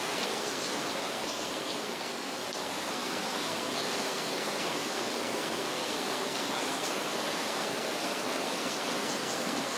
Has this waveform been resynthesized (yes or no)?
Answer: yes